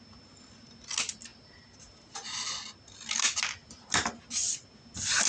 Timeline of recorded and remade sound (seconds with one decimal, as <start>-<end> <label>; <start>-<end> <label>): 0.0-5.3 recorded